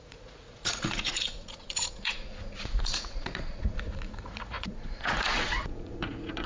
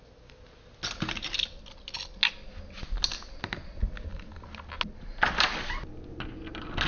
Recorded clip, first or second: second